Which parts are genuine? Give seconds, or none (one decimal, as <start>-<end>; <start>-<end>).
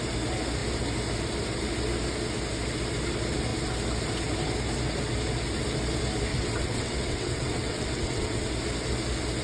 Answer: 0.0-6.3; 8.5-9.4